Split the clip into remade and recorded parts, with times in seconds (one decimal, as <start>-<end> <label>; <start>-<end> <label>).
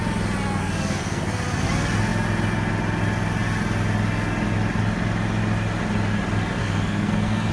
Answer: 0.0-0.6 recorded; 0.6-1.4 remade; 1.4-6.6 recorded; 6.6-7.5 remade